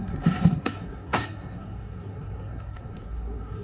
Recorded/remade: remade